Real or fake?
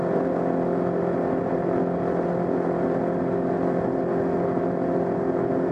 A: real